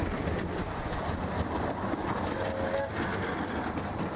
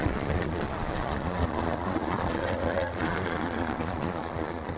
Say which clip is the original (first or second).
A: first